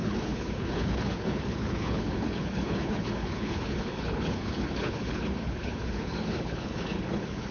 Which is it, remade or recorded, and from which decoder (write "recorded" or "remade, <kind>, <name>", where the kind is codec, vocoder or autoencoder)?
remade, codec, HILCodec